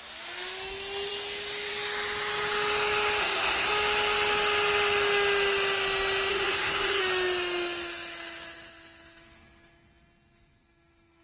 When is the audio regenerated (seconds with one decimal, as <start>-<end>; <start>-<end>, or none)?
3.2-3.7; 6.3-7.0